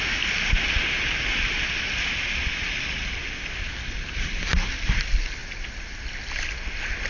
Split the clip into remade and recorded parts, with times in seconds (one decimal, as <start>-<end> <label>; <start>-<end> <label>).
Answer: 0.0-7.1 recorded